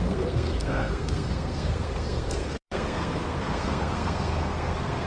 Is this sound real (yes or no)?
no